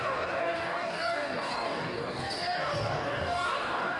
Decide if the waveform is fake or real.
fake